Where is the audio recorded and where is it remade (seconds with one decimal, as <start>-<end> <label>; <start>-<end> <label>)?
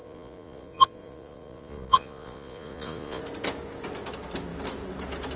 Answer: 0.0-3.2 remade; 3.2-5.4 recorded